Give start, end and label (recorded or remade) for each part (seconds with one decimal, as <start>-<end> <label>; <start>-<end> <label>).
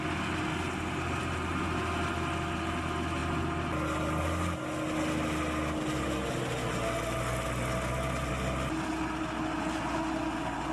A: 0.0-10.7 recorded